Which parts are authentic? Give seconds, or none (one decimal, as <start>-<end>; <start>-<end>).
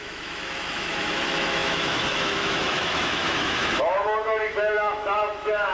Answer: none